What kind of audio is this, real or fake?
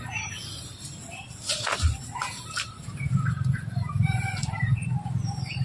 fake